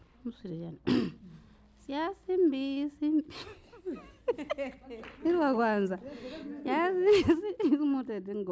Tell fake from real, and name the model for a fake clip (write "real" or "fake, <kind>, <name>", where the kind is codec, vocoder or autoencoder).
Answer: real